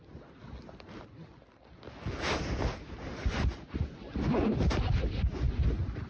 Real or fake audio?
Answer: real